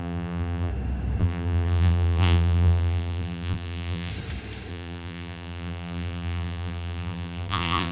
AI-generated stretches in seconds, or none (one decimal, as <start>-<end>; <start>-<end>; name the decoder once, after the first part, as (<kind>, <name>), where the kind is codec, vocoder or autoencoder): 0.0-0.7 (vocoder, BigVGAN v2); 1.2-4.1; 4.7-7.9